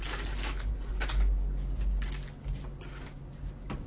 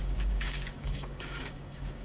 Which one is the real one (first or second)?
first